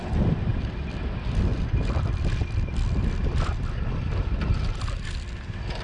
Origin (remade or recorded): recorded